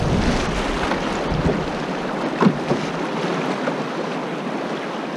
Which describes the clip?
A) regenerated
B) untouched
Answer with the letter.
B